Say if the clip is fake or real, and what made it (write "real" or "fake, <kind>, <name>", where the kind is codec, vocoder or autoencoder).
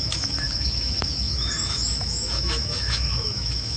fake, autoencoder, DAC-VAE